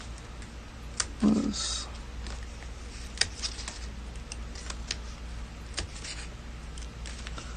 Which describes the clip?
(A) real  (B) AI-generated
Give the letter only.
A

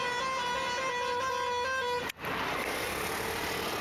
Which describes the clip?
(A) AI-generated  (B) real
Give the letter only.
B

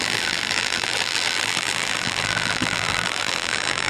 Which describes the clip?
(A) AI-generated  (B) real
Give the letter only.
A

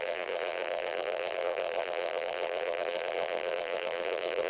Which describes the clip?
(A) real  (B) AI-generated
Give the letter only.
B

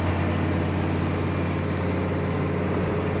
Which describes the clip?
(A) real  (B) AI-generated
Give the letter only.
A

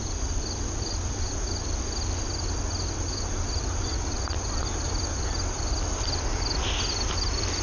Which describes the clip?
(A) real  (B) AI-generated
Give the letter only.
A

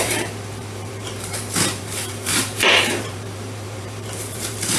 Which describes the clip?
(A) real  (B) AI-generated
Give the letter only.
B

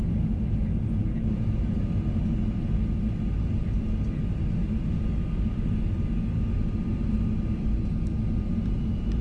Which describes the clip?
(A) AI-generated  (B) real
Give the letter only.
B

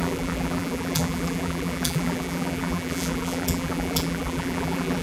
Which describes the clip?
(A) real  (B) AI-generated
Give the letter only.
B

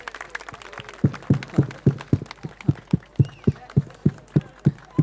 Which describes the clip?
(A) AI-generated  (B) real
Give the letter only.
B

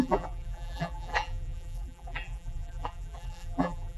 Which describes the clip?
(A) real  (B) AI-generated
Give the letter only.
B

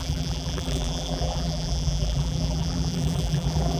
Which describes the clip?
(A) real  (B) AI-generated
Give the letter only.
B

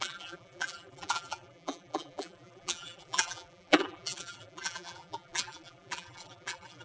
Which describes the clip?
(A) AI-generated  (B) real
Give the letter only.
A